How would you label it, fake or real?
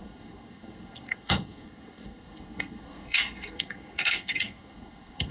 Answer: fake